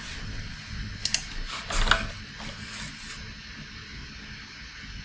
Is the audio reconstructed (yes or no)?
no